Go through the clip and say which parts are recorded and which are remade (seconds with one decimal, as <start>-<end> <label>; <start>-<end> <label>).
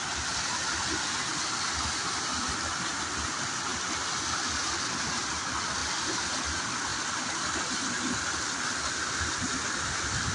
0.0-10.3 recorded